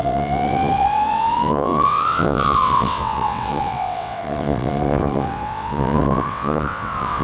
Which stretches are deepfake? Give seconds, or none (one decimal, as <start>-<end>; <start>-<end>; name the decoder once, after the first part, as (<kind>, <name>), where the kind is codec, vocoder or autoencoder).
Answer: 0.0-7.2 (vocoder, WaveNeXt)